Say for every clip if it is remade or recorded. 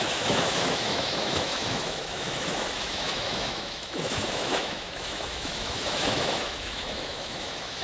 remade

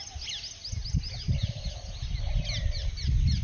recorded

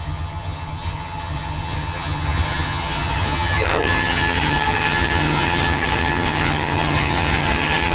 remade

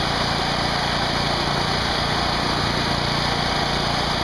recorded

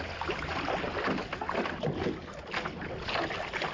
recorded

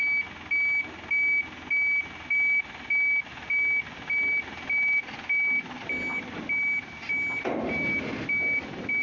recorded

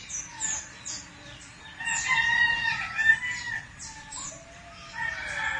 recorded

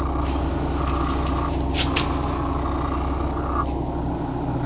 recorded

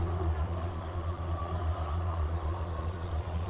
remade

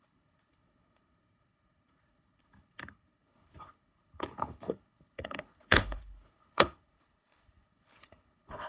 remade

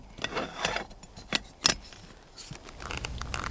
recorded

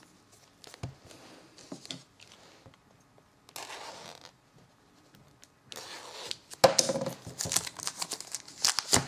recorded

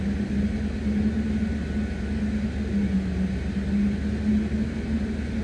recorded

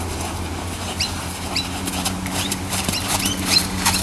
remade